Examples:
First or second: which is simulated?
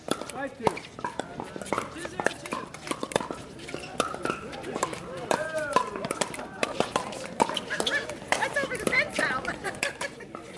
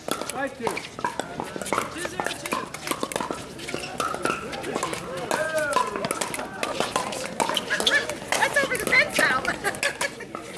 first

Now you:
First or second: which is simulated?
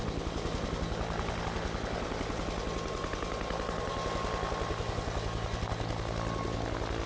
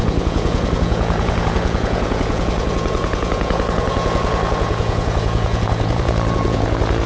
second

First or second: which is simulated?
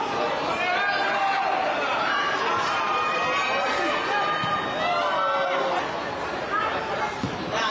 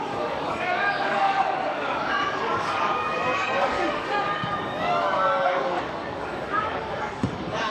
second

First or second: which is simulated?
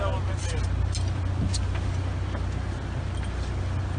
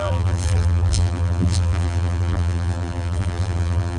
second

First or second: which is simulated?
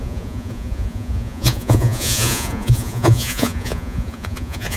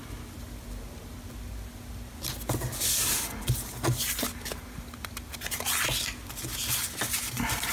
first